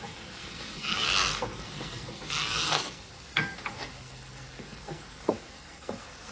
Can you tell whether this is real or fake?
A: fake